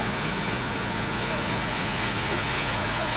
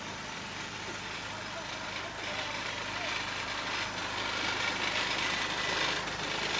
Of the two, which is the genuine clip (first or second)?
second